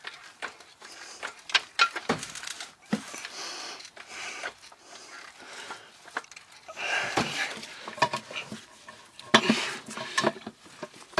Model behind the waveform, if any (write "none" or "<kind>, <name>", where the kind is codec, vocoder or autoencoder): none